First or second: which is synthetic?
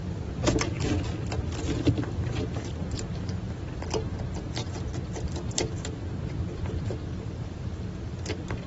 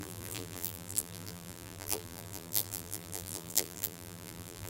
second